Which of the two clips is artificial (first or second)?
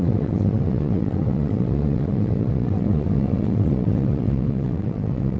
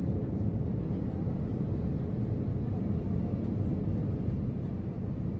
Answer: first